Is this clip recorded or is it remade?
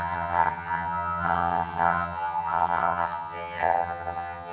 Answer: remade